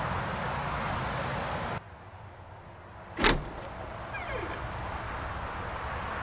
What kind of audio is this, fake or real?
real